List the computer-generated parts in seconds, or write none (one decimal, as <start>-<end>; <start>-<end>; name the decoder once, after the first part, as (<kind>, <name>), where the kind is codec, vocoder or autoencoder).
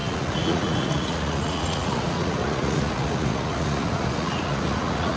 0.0-5.2 (vocoder, Vocos)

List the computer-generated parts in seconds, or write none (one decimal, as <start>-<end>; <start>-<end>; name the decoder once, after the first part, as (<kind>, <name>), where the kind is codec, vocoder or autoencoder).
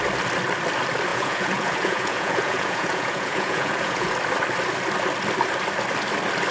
1.1-4.1 (vocoder, Vocos)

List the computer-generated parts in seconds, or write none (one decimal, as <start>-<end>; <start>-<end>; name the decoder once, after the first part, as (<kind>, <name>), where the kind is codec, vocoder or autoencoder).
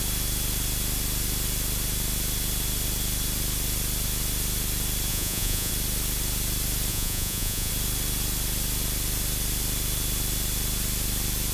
5.1-5.7 (vocoder, Vocos); 6.9-7.7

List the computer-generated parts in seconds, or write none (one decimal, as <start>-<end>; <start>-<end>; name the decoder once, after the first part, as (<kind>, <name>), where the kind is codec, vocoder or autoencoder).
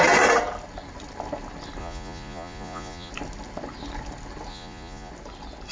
1.8-3.1 (vocoder, Vocos); 4.5-5.1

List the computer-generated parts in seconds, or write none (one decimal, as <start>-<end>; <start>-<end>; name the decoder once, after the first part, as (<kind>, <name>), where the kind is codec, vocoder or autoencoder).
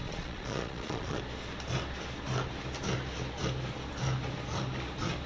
0.0-1.2 (vocoder, Vocos)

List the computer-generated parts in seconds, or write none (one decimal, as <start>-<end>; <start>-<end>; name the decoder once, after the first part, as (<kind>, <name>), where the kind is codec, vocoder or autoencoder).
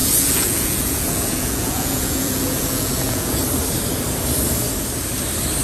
0.0-3.4 (vocoder, Vocos)